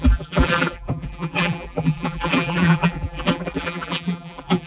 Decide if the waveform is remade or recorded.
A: remade